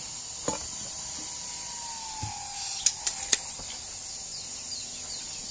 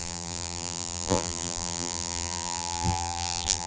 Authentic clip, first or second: first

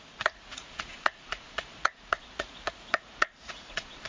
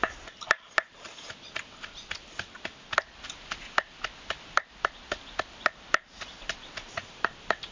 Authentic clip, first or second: second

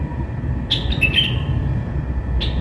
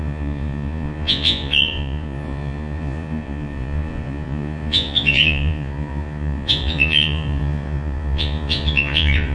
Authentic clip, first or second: first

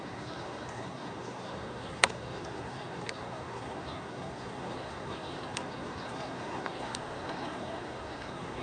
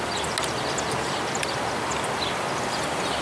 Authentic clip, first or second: second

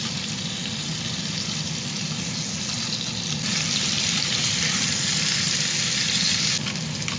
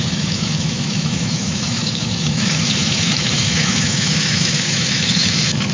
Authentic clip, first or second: first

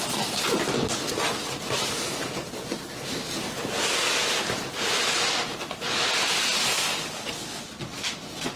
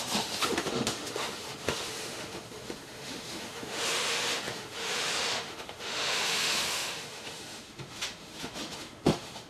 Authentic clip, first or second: first